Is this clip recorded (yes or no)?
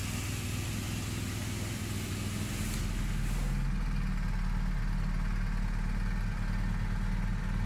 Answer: yes